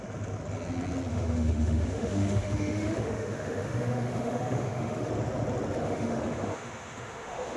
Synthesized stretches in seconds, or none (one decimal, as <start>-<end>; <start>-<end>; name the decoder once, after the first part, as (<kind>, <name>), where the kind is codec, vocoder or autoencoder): 1.1-5.1 (autoencoder, DAC-VAE); 5.8-7.6